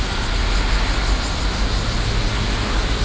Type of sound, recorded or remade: recorded